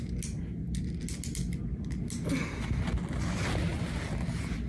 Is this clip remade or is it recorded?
recorded